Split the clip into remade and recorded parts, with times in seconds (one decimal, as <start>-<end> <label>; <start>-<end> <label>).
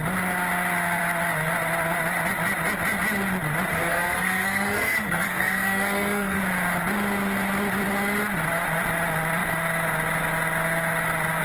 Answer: 0.0-3.7 recorded; 3.7-6.4 remade; 6.4-11.4 recorded